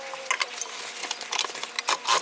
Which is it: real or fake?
real